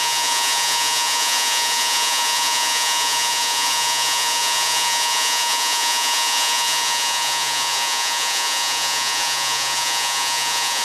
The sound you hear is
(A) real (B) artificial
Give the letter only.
B